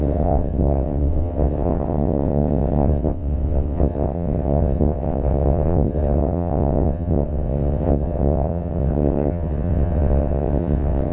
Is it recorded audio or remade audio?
remade